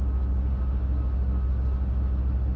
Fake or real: real